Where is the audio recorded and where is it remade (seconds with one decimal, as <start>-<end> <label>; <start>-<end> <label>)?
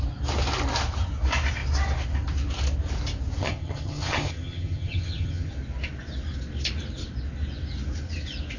0.0-3.4 recorded; 3.4-5.5 remade; 5.5-8.6 recorded